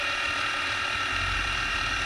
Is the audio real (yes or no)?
yes